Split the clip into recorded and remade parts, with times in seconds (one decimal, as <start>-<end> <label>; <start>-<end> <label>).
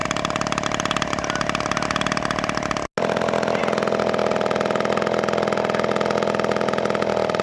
0.0-7.4 recorded